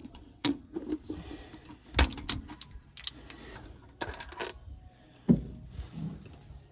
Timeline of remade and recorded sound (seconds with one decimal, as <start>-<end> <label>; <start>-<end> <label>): 0.0-0.8 remade; 0.8-6.7 recorded